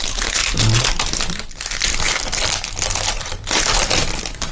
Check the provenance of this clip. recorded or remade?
recorded